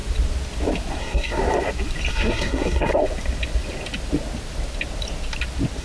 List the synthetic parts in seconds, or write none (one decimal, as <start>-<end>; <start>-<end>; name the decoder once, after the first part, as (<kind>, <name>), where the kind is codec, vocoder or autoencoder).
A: 1.0-1.4 (codec, SNAC); 2.1-2.9